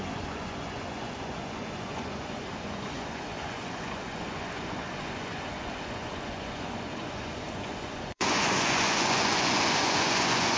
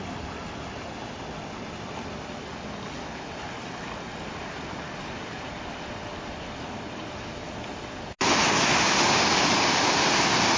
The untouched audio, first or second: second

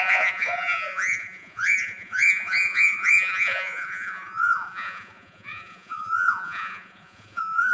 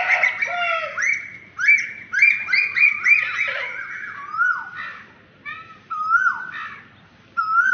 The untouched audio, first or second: second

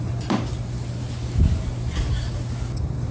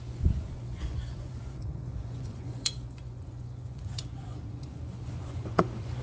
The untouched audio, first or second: first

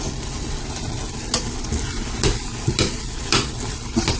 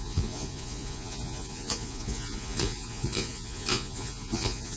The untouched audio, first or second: first